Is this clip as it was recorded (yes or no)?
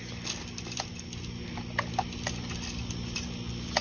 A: yes